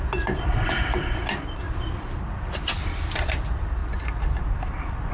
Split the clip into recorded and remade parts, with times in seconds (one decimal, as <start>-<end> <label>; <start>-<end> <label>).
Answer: 0.0-1.0 remade; 1.0-1.7 recorded; 1.7-3.8 remade; 3.8-5.1 recorded